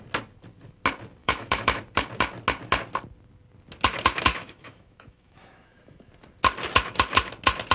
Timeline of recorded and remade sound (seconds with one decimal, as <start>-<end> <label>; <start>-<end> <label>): 0.0-1.2 recorded; 1.2-1.8 remade; 1.8-4.3 recorded; 4.3-6.1 remade; 6.1-7.7 recorded